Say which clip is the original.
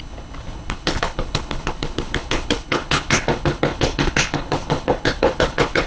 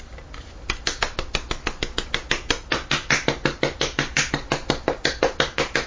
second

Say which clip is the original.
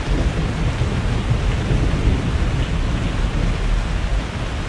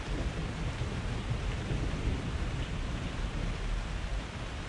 first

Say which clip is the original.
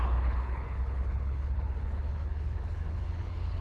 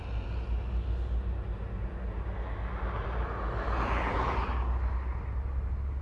second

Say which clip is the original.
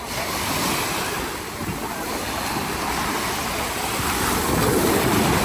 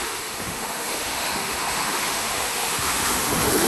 first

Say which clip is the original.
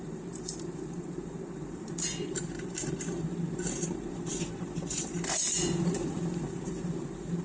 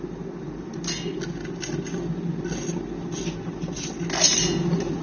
second